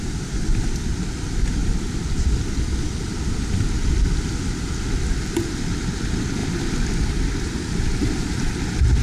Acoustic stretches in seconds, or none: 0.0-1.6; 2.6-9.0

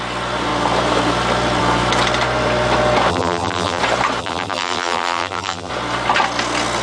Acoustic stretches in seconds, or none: 0.0-3.1; 3.8-4.2; 5.7-6.8

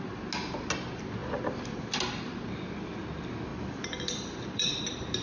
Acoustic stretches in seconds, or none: 0.0-3.5; 4.8-5.2

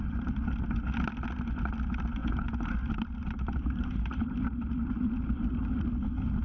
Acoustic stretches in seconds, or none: 0.0-2.2; 5.7-6.4